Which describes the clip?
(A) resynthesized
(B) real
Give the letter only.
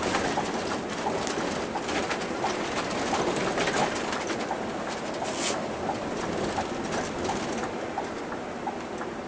B